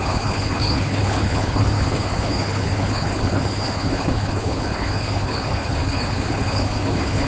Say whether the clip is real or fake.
fake